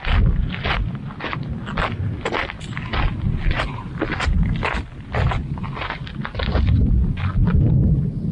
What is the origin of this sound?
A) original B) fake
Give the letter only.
A